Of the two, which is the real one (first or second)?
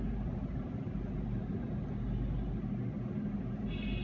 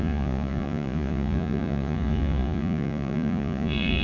first